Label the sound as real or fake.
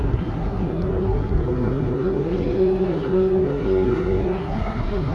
fake